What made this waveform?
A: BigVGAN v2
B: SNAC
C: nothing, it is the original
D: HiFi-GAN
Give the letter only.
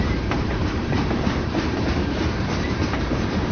A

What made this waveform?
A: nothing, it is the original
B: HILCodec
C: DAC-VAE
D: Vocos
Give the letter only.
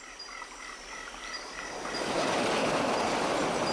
A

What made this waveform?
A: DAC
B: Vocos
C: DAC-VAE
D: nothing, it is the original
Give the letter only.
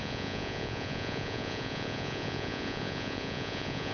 B